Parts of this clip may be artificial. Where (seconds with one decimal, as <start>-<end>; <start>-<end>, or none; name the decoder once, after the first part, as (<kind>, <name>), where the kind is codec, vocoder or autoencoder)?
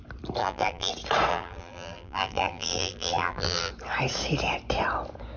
0.4-0.9 (vocoder, BigVGAN v2); 1.3-3.7